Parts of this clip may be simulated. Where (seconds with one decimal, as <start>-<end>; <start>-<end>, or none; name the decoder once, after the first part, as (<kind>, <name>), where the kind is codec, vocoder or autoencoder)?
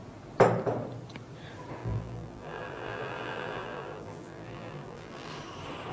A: 1.8-5.3 (vocoder, BigVGAN v2)